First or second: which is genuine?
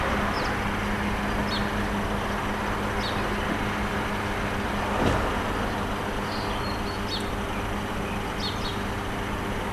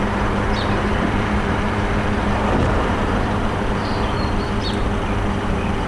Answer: first